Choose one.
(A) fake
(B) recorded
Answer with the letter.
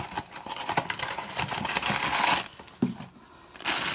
B